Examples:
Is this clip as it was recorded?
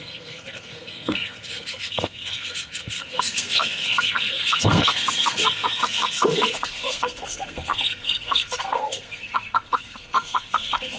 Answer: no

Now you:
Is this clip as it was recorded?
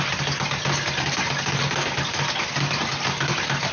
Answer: yes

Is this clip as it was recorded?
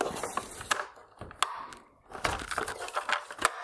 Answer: yes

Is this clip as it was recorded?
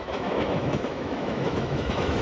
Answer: no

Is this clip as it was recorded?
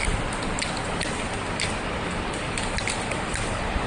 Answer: yes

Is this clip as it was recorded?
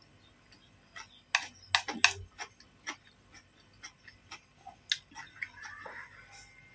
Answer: yes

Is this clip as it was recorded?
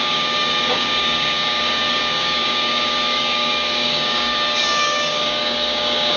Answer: no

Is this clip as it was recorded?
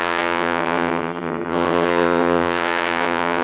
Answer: no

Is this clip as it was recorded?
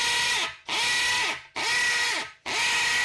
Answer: yes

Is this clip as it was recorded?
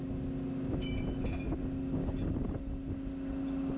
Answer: yes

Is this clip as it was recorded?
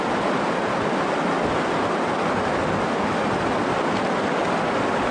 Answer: yes